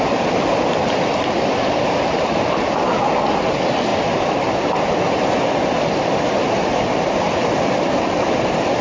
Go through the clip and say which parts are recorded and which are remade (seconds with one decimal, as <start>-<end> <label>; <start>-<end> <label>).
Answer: 0.0-8.8 remade